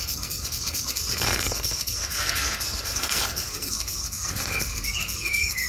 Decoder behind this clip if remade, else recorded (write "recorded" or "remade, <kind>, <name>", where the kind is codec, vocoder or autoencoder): remade, codec, SNAC